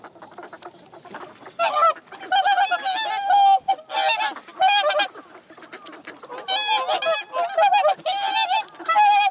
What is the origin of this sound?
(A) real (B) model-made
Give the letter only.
A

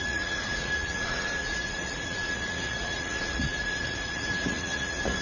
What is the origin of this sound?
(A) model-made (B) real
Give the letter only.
A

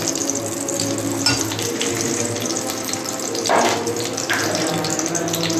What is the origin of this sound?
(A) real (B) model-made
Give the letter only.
A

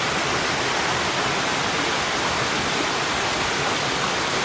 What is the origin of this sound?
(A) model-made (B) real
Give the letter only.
B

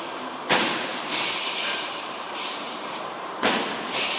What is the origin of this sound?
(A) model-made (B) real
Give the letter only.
A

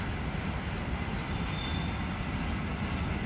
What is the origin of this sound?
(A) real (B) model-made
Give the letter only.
A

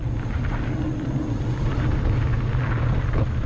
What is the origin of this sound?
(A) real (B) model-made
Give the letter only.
A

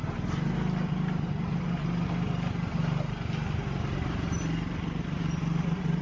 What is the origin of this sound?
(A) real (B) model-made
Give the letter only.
A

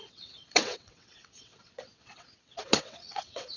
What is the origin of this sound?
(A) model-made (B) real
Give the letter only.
A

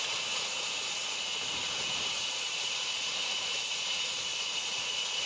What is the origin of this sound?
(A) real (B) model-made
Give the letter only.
B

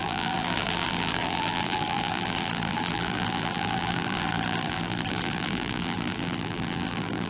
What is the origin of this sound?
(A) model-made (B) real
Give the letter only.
A